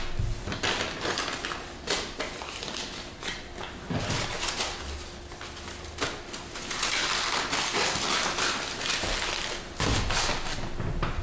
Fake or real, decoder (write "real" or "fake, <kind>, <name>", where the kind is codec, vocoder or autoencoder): real